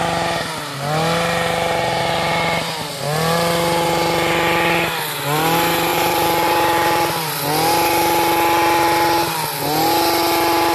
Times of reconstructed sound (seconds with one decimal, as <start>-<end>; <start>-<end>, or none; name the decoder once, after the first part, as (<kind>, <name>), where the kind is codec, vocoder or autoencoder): 5.9-7.3 (vocoder, BigVGAN v2)